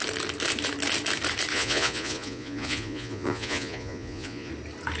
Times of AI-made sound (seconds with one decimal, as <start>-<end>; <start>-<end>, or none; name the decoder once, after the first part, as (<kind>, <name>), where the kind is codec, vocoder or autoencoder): 1.5-4.5 (vocoder, Vocos)